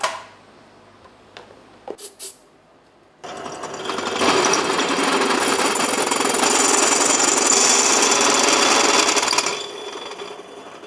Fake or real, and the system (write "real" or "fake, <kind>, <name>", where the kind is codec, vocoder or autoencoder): real